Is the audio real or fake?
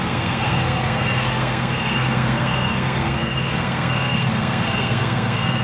fake